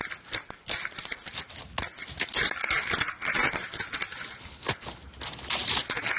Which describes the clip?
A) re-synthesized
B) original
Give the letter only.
B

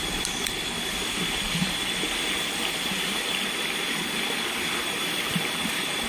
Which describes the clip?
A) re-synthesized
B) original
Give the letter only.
B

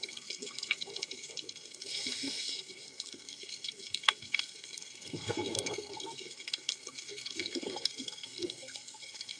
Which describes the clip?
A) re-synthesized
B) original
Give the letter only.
A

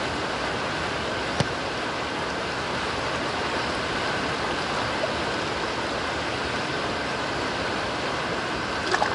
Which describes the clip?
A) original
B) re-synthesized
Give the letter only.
A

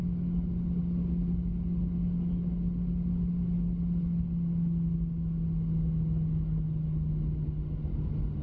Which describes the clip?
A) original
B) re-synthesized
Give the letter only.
A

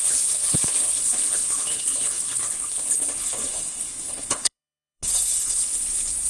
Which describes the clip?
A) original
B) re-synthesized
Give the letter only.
B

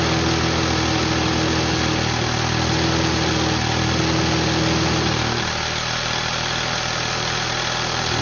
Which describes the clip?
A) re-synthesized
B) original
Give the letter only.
B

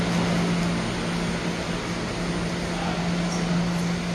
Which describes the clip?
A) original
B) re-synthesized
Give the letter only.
A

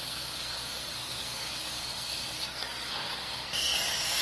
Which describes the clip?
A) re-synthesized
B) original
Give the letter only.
A